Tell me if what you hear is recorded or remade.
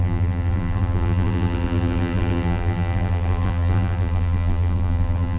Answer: remade